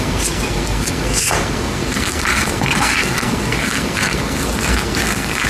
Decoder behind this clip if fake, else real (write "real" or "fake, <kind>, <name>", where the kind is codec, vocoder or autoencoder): fake, codec, SNAC